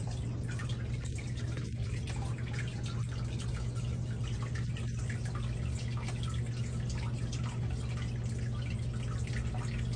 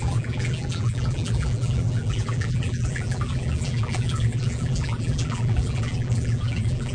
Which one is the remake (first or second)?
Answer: second